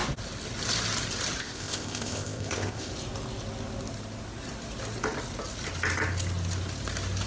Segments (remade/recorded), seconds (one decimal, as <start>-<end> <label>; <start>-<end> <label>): 0.0-1.4 recorded; 1.4-2.9 remade; 2.9-7.3 recorded